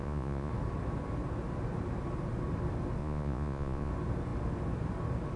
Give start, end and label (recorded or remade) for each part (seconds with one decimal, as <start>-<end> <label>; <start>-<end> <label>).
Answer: 0.0-0.5 remade; 0.5-3.0 recorded; 3.0-3.9 remade; 3.9-5.4 recorded